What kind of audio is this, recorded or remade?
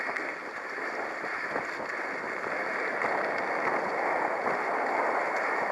recorded